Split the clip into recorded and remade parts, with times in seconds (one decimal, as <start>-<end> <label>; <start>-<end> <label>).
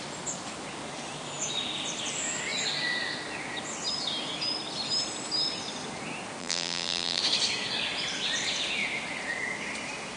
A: 0.0-6.4 recorded; 6.4-7.2 remade; 7.2-10.2 recorded